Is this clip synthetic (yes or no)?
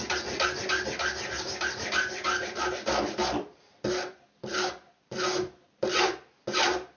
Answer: no